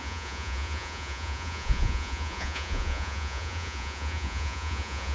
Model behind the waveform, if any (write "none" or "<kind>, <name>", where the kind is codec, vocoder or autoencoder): vocoder, Vocos